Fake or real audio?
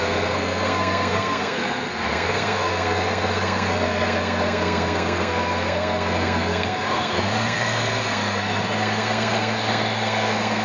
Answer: fake